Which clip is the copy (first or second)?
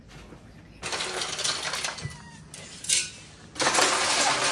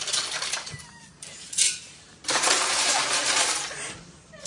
second